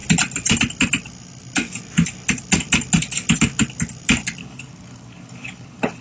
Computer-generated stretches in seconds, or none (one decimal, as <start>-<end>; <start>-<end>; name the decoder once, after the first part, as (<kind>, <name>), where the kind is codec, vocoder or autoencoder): 4.4-6.0 (codec, HILCodec)